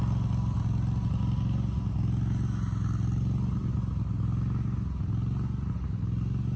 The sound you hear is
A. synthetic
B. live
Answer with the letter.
B